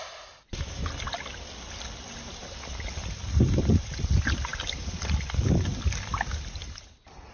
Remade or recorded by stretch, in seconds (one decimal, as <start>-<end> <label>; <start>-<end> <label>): 0.0-7.3 recorded